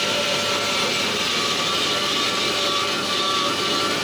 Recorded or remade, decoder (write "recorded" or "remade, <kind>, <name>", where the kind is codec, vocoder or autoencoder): recorded